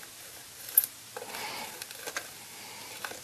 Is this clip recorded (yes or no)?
yes